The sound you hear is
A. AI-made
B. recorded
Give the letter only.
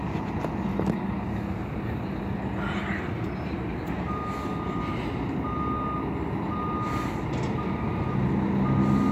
B